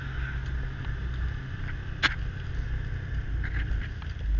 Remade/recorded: recorded